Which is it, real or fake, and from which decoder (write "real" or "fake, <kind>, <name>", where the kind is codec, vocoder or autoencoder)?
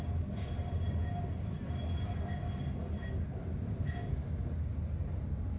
real